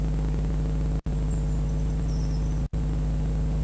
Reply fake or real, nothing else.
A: real